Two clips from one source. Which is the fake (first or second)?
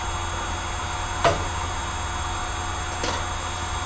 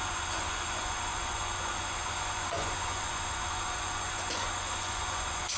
second